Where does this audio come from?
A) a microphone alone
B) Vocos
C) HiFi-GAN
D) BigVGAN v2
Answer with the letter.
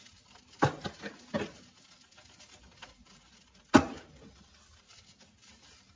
A